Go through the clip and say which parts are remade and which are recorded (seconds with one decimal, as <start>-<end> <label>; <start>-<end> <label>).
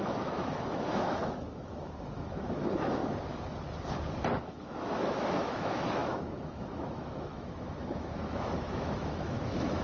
0.0-3.0 remade; 3.0-4.5 recorded; 4.5-9.8 remade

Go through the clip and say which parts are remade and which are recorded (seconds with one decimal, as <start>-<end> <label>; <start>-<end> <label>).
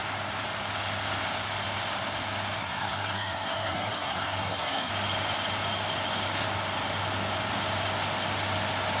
0.0-2.6 recorded; 2.6-4.9 remade; 4.9-9.0 recorded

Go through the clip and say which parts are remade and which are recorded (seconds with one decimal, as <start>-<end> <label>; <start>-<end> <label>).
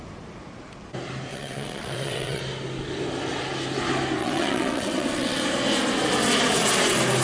0.0-1.3 recorded; 1.3-2.4 remade; 2.4-4.2 recorded; 4.2-5.4 remade; 5.4-7.2 recorded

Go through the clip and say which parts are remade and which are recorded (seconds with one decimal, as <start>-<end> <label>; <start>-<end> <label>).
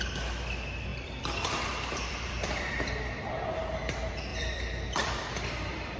0.0-0.9 recorded; 0.9-3.6 remade; 3.6-4.3 recorded; 4.3-6.0 remade